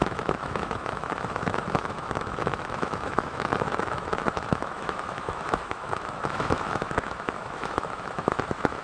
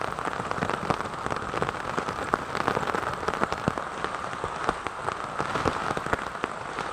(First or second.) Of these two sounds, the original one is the second